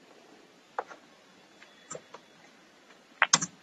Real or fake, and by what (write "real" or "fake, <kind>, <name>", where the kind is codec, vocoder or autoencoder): real